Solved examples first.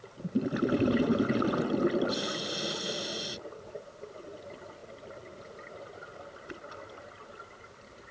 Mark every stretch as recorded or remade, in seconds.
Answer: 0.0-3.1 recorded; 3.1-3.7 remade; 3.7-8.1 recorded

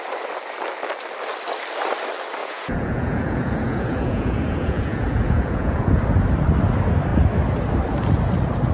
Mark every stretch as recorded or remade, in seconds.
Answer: 0.0-2.4 recorded; 2.4-6.0 remade; 6.0-8.7 recorded

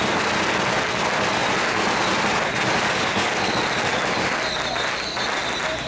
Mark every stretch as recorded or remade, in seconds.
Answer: 0.0-5.9 recorded

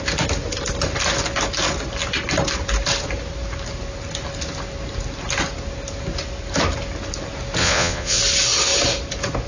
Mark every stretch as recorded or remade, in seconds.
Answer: 0.0-7.6 recorded; 7.6-8.2 remade; 8.2-9.5 recorded

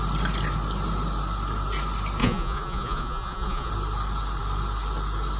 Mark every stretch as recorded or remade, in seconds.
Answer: 0.0-2.2 recorded; 2.2-3.7 remade; 3.7-5.4 recorded